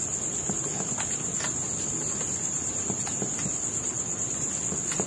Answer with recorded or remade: recorded